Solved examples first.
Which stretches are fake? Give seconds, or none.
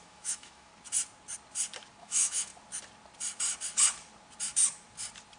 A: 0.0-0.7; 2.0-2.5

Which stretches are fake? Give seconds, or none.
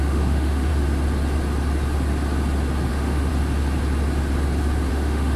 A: 0.0-0.7; 2.9-3.3; 4.9-5.4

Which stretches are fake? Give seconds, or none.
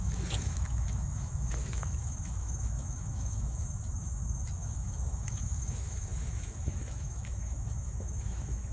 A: 0.0-8.7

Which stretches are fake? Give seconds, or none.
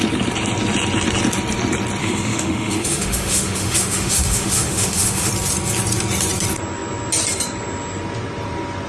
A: 2.0-5.3